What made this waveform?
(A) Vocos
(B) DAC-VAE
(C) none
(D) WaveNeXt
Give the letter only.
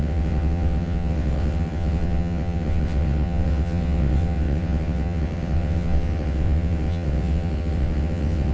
D